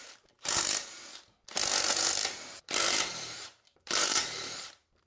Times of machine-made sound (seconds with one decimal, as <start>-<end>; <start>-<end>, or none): 0.0-1.0; 1.8-5.1